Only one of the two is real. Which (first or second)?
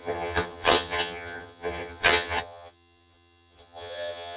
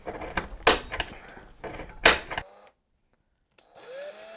second